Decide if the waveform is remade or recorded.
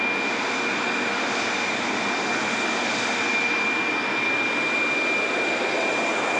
recorded